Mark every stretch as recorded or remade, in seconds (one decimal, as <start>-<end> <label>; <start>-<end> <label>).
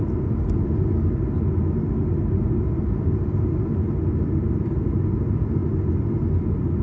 0.0-6.8 recorded